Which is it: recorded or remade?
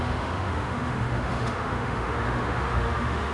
remade